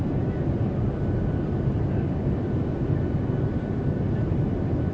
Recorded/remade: recorded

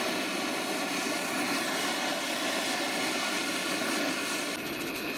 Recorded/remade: recorded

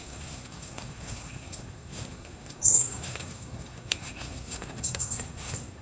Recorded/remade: remade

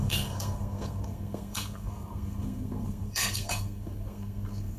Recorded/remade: remade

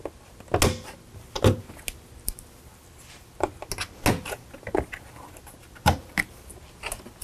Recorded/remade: recorded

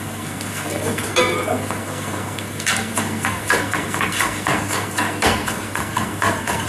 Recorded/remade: remade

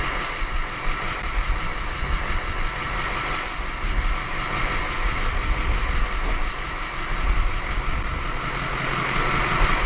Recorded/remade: recorded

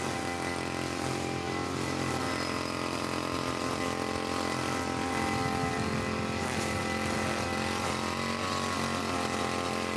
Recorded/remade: recorded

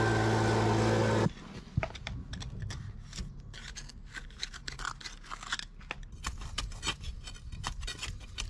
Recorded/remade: recorded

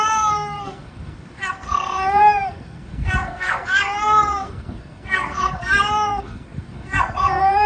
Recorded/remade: remade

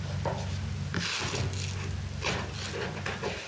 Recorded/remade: recorded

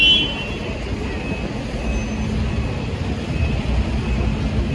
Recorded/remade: recorded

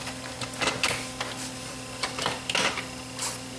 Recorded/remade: recorded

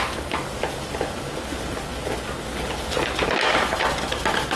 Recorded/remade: recorded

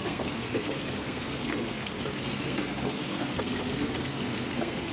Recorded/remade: remade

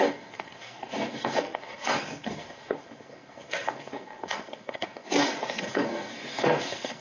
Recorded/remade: remade